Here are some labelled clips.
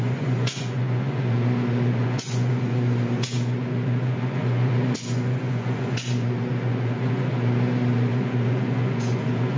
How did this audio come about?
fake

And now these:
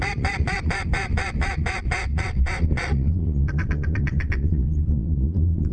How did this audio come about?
fake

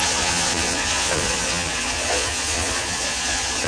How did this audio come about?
fake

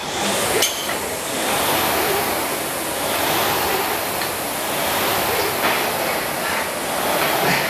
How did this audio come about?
real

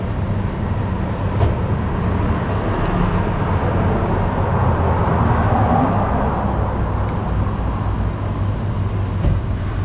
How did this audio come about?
real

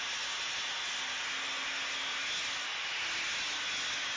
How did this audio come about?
real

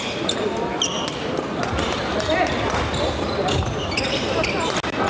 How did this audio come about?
real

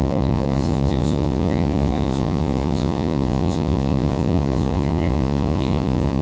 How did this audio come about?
fake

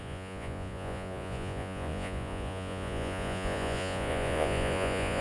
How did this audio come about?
fake